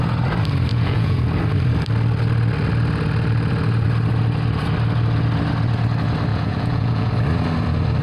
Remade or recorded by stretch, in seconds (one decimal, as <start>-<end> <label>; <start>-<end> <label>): 0.0-0.7 recorded; 0.7-1.2 remade; 1.2-6.3 recorded; 6.3-7.1 remade; 7.1-8.0 recorded